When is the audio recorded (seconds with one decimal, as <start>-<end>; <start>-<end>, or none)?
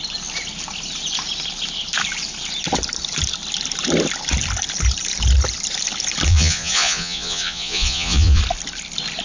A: 0.0-6.3; 8.4-9.2